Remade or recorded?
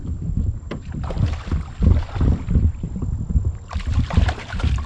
remade